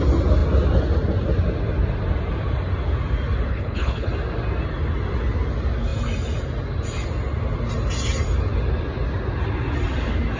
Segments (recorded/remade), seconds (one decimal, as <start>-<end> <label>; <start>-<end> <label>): 0.0-3.5 recorded; 3.5-4.1 remade; 4.1-10.4 recorded